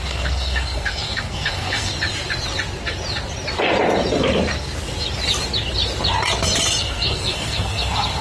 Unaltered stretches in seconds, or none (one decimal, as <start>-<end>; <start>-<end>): 1.9-6.8